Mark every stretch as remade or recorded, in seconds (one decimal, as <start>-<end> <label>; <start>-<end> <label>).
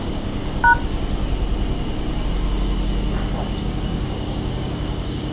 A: 0.0-0.4 remade; 0.4-3.6 recorded; 3.6-5.3 remade